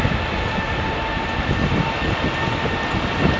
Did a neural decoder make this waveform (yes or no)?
no